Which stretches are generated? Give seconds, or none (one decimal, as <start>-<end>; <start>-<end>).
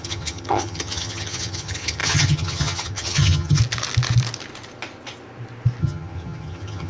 0.0-3.6; 5.8-6.9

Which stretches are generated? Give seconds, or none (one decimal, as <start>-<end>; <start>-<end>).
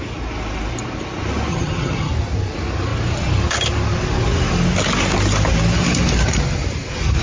1.5-2.1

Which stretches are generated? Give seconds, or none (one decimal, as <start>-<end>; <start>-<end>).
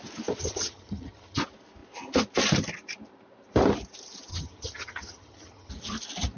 0.4-1.4; 4.3-5.7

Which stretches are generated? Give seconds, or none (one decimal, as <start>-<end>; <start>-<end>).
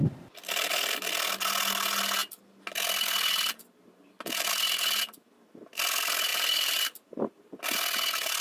6.3-7.5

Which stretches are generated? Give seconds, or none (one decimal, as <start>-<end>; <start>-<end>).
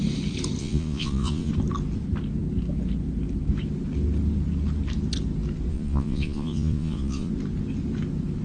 0.6-1.5; 5.7-7.3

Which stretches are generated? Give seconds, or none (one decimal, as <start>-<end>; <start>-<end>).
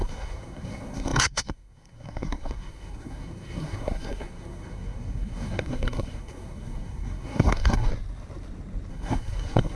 0.0-7.9; 8.9-9.8